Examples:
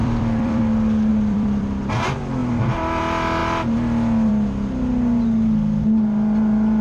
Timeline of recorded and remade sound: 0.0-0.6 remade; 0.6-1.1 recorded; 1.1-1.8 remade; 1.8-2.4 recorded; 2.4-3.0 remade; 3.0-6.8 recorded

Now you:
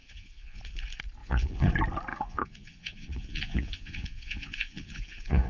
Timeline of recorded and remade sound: 0.0-0.6 remade; 0.6-1.2 recorded; 1.2-1.7 remade; 1.7-2.1 recorded; 2.1-5.5 remade

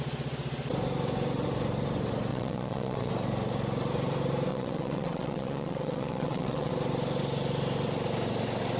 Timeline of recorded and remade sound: 0.0-2.3 recorded; 2.3-3.1 remade; 3.1-4.5 recorded; 4.5-6.7 remade; 6.7-8.8 recorded

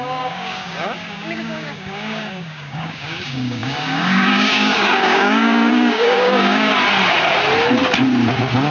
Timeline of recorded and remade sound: 0.0-6.7 remade; 6.7-8.7 recorded

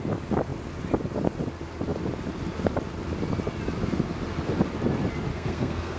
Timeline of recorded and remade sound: 0.0-5.3 recorded; 5.3-6.0 remade

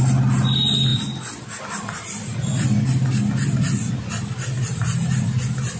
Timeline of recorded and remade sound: 0.0-5.8 recorded

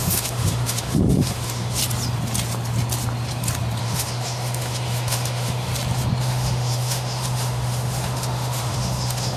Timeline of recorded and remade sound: 0.0-1.8 remade; 1.8-3.8 recorded; 3.8-5.7 remade; 5.7-6.2 recorded; 6.2-9.4 remade